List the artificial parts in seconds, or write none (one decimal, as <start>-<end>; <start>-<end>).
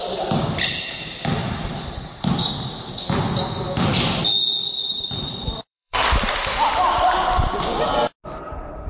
1.4-2.5; 4.8-6.3